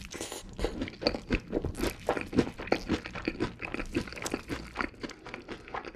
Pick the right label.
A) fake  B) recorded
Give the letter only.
B